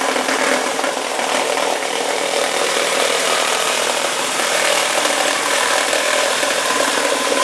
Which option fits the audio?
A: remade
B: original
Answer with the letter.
A